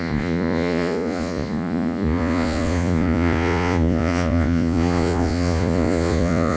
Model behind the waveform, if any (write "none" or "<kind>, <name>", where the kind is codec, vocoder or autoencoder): vocoder, Vocos